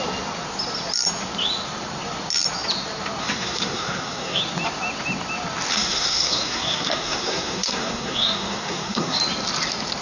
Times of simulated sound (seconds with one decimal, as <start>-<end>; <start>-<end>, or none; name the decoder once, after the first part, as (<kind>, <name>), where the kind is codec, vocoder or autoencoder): 3.2-4.4 (codec, SNAC); 5.7-9.2